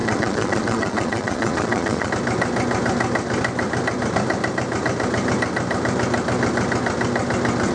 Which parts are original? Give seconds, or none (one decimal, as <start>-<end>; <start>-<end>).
2.1-7.7